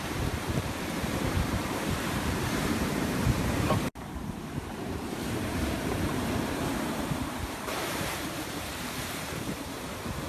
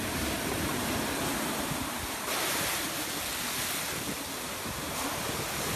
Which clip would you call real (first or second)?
second